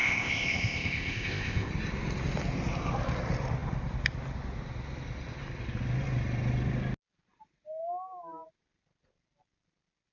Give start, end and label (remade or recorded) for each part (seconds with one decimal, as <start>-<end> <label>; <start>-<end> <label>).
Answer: 0.0-1.7 remade; 1.7-10.1 recorded